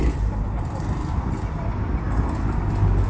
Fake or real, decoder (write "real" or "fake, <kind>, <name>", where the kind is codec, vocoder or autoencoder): real